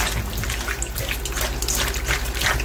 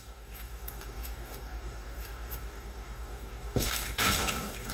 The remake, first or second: second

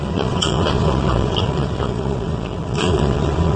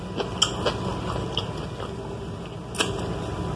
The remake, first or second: first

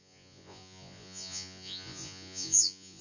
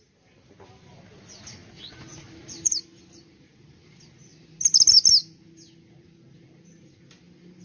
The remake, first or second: first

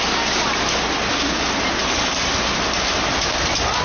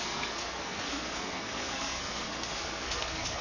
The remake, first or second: second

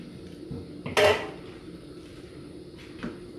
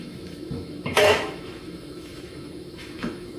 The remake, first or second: second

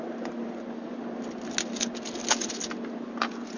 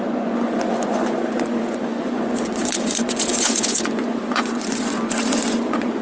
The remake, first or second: second